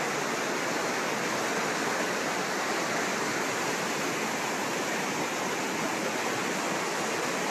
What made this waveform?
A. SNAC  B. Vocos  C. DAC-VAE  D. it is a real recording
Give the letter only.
D